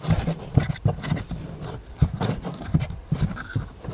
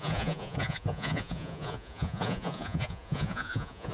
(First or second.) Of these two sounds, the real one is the first